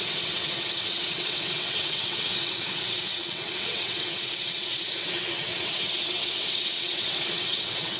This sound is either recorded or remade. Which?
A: remade